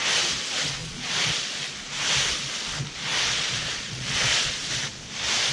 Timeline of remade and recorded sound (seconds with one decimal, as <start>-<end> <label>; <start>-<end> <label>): 0.0-0.8 recorded; 0.8-1.3 remade; 1.3-3.1 recorded; 3.1-4.6 remade; 4.6-5.5 recorded